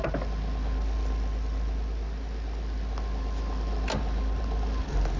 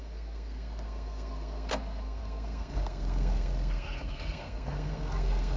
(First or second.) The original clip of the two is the first